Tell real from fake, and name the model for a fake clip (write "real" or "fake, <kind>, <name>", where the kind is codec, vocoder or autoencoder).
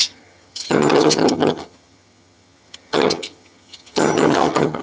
fake, vocoder, HiFi-GAN